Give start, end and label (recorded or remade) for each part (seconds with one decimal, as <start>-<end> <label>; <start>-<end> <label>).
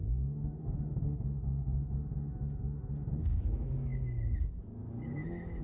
0.0-3.4 remade; 3.4-5.6 recorded